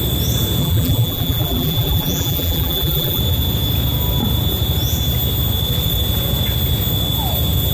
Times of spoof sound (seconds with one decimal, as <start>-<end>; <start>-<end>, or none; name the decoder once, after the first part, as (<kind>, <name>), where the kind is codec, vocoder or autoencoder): 0.6-3.2 (vocoder, BigVGAN v2)